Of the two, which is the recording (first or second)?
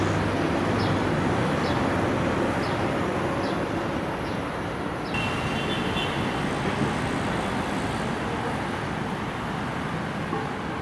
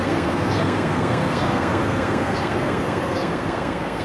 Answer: first